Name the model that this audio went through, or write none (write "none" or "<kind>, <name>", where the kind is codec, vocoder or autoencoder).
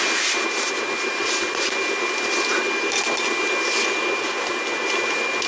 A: none